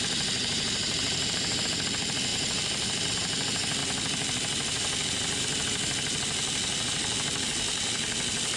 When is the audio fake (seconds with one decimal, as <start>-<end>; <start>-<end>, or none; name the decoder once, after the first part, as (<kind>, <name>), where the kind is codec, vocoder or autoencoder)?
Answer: 0.4-1.6 (vocoder, BigVGAN v2)